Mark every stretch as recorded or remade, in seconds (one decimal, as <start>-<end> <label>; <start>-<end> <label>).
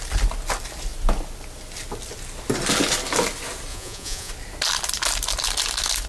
0.0-3.7 recorded; 3.7-4.3 remade; 4.3-6.1 recorded